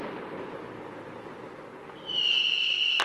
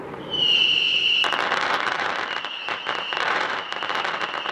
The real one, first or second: first